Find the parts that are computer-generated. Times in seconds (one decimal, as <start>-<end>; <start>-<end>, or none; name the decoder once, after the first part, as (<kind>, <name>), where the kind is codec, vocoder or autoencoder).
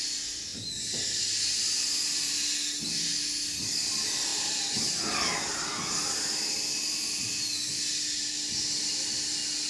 4.3-5.3 (vocoder, BigVGAN v2)